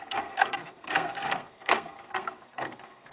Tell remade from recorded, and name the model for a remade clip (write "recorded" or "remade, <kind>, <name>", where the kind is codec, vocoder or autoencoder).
remade, codec, SNAC